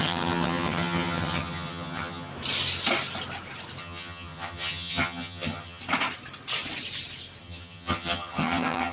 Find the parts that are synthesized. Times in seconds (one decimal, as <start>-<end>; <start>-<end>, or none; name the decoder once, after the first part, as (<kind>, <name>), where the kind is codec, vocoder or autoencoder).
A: 0.0-2.3 (vocoder, HiFi-GAN); 3.8-5.8; 7.4-8.9